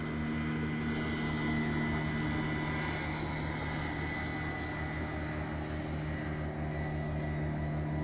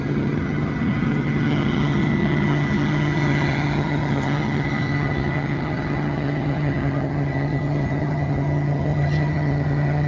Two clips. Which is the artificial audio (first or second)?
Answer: second